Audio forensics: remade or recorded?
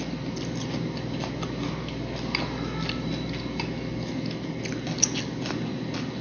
recorded